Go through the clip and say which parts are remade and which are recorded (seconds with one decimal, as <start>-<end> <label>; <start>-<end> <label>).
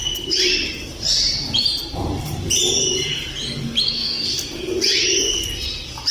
0.0-3.3 remade; 3.3-6.1 recorded